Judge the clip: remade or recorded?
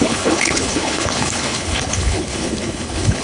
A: remade